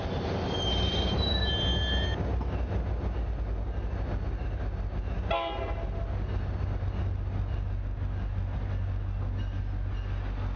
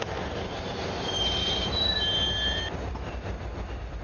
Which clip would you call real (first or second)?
first